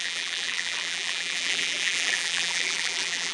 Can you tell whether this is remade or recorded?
remade